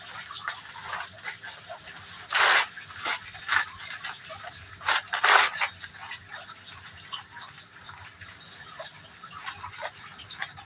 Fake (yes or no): no